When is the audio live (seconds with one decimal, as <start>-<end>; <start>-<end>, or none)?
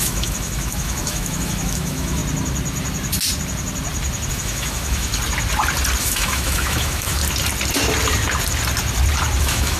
2.2-4.3; 5.1-6.0; 7.2-9.4